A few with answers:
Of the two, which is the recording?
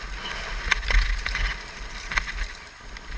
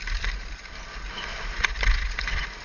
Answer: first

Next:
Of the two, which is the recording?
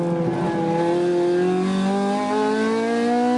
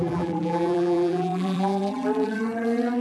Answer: first